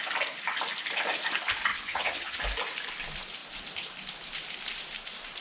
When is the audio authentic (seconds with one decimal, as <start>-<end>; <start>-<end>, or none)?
0.0-1.7; 2.4-5.4